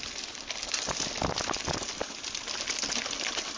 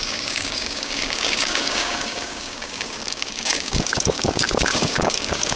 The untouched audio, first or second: first